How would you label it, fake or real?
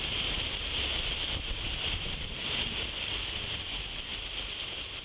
real